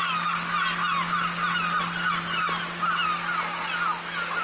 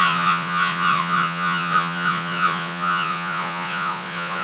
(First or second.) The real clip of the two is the first